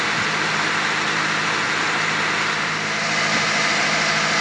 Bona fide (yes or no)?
yes